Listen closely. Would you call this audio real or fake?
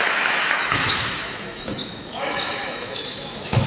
fake